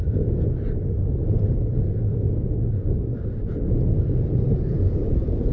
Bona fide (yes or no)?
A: yes